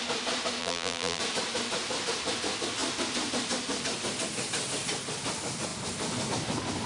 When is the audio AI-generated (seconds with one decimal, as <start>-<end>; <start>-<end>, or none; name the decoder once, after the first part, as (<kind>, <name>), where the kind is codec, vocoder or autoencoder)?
0.6-1.2 (vocoder, BigVGAN v2)